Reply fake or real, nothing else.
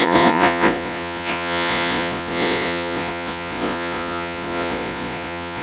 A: fake